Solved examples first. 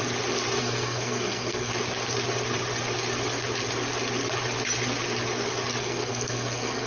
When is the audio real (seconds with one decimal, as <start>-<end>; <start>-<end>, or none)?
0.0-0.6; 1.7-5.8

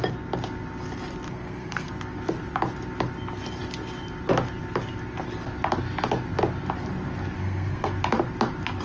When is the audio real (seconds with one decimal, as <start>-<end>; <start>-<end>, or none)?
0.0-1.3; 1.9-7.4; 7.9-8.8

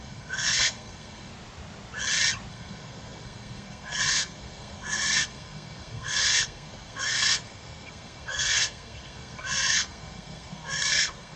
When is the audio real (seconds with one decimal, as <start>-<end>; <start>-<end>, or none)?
1.3-2.5

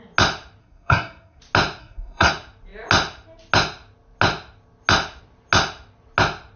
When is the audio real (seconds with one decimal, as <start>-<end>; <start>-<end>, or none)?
0.0-0.6; 1.4-1.8; 2.3-6.6